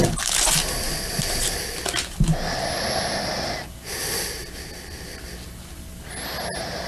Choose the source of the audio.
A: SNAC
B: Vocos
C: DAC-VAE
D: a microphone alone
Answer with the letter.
D